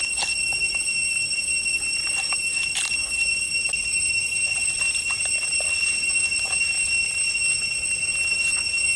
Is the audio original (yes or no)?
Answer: yes